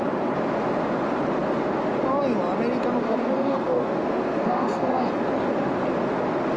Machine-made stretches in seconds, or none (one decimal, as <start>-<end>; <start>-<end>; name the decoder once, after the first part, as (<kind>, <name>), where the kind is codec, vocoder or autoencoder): 3.0-5.1 (codec, SNAC)